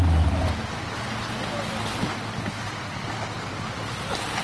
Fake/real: real